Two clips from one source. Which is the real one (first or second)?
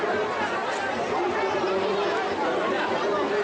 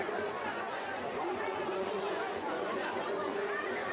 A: first